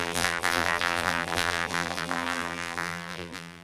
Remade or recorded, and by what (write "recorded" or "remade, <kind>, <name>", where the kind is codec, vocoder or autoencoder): remade, vocoder, BigVGAN v2